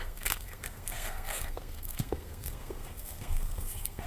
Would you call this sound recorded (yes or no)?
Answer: no